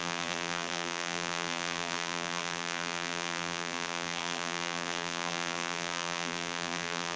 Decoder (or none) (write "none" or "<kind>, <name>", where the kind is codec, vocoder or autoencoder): vocoder, BigVGAN v2